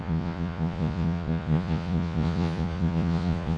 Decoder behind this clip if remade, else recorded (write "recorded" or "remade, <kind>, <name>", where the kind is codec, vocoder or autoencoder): remade, vocoder, Vocos